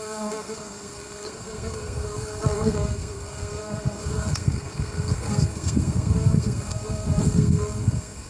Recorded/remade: remade